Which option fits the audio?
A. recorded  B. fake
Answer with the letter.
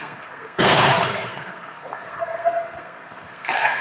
B